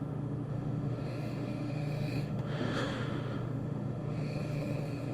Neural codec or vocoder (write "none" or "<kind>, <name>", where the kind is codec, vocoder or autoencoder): autoencoder, DAC-VAE